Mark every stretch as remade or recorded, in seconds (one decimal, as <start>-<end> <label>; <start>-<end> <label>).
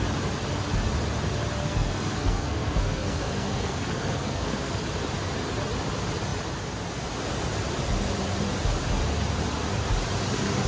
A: 0.0-1.6 recorded; 1.6-4.8 remade; 4.8-10.7 recorded